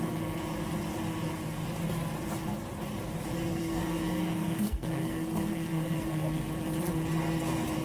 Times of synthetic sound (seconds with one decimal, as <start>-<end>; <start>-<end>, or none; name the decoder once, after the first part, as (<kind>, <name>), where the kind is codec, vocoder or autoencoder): 3.5-6.5 (codec, SNAC)